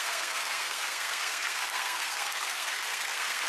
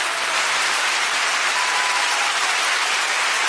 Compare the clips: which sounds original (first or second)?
second